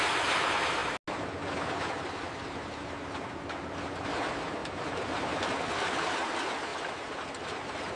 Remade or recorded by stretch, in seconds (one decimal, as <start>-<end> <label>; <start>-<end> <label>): 0.0-4.6 recorded; 4.6-5.7 remade; 5.7-6.7 recorded; 6.7-8.0 remade

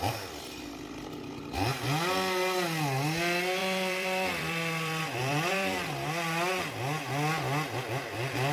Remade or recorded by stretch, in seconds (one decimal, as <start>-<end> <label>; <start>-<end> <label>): 0.0-3.6 recorded; 3.6-6.6 remade; 6.6-8.5 recorded